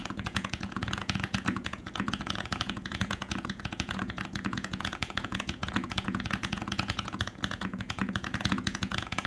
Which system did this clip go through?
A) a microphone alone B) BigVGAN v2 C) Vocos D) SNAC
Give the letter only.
C